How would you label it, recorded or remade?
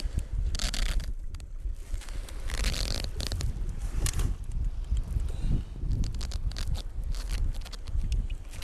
remade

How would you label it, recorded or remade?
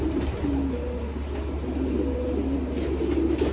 recorded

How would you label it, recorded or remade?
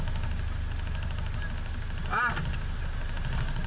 recorded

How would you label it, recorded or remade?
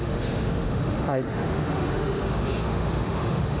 remade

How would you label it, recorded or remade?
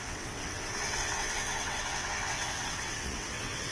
remade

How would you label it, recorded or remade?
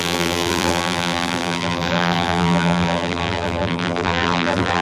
remade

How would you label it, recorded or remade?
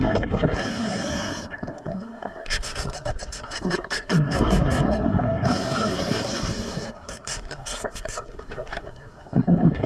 remade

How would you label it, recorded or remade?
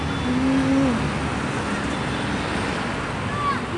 recorded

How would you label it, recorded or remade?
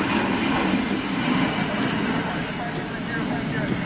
recorded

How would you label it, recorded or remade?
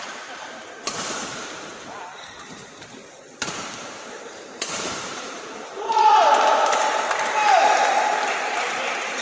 remade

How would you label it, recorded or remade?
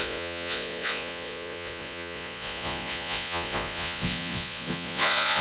remade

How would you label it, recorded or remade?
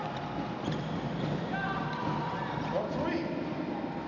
recorded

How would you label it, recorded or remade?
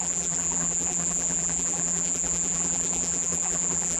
remade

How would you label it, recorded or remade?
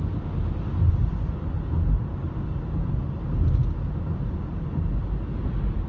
recorded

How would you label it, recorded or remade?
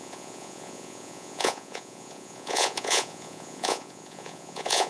remade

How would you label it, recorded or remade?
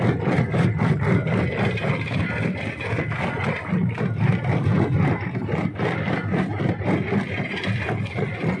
recorded